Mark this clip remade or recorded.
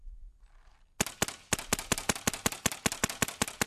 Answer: recorded